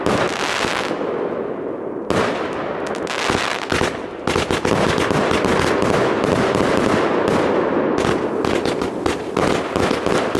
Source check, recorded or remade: recorded